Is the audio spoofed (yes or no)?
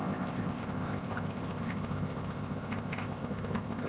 yes